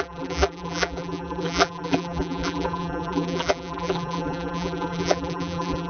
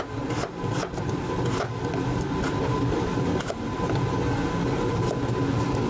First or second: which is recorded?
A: second